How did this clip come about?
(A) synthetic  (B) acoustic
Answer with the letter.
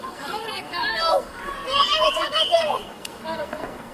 A